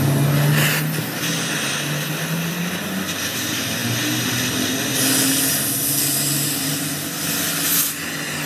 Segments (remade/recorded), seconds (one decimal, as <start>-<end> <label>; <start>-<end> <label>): 0.0-8.5 recorded